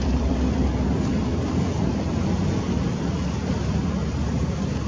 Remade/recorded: remade